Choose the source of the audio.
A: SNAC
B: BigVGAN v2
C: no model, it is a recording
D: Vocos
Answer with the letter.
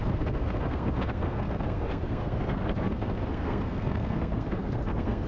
A